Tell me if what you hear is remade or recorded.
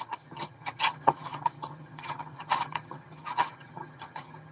remade